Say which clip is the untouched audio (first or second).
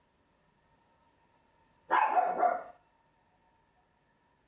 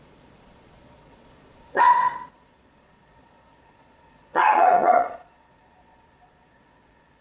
first